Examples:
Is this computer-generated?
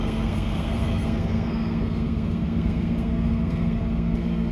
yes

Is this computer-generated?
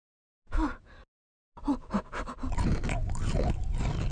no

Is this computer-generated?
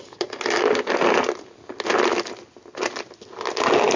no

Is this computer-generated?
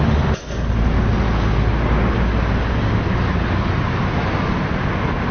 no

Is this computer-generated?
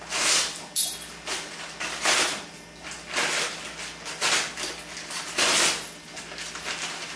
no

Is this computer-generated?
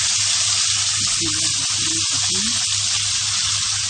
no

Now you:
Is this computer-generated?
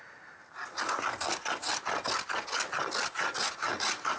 no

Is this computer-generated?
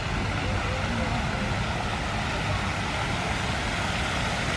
no